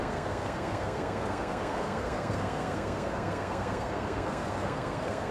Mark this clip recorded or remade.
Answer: remade